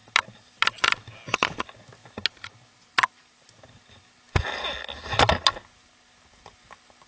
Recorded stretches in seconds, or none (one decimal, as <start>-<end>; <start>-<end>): 0.0-7.1